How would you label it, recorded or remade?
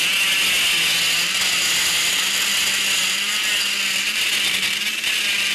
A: recorded